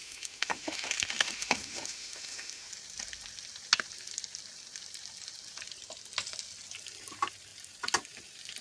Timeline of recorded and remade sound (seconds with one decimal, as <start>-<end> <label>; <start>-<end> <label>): 0.0-2.7 remade; 2.7-8.6 recorded

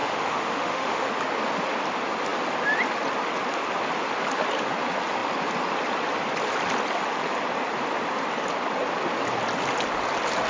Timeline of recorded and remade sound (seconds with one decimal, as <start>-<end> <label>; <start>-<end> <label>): 0.0-1.1 remade; 1.1-10.5 recorded

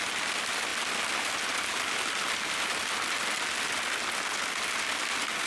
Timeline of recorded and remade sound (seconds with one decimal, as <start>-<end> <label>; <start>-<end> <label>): 0.0-5.5 recorded

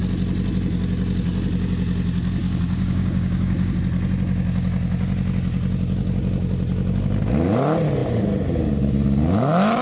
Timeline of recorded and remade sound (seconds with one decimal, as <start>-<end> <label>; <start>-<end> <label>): 0.0-2.4 recorded; 2.4-3.8 remade; 3.8-9.8 recorded